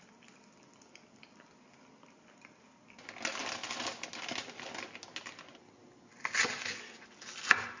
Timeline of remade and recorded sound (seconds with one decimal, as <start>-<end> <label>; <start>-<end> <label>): 0.0-7.8 recorded